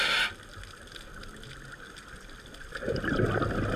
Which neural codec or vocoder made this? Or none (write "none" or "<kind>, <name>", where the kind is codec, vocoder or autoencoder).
none